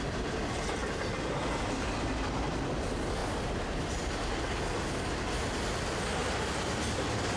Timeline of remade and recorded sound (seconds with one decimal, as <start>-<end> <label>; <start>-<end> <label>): 0.0-6.2 recorded; 6.2-6.8 remade; 6.8-7.4 recorded